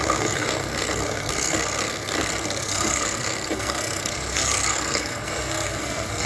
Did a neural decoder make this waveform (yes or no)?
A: yes